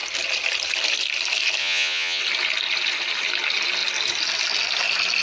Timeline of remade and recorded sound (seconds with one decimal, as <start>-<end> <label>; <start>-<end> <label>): 0.0-1.6 recorded; 1.6-2.2 remade; 2.2-5.2 recorded